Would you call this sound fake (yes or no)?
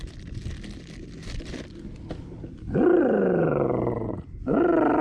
no